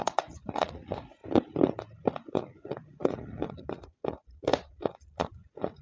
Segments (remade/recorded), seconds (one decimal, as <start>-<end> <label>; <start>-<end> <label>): 0.0-1.2 remade; 1.2-2.3 recorded; 2.3-5.8 remade